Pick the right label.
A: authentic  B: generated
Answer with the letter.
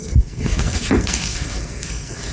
B